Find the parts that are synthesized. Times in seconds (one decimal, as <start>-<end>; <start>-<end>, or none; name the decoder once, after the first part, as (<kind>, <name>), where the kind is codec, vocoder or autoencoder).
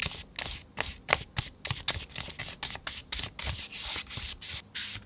none